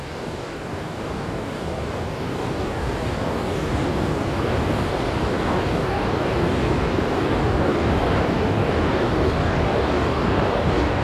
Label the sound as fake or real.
fake